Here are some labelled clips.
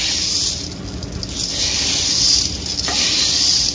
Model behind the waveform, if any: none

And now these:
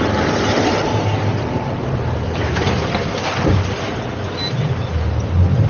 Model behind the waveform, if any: none